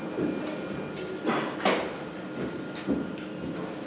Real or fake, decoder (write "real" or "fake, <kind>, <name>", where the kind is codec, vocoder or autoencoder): real